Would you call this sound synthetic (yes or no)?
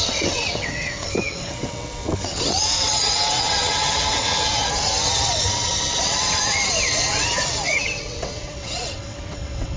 yes